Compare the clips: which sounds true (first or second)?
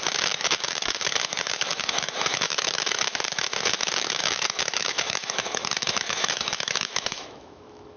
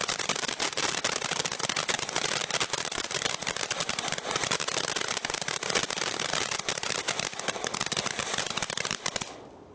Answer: second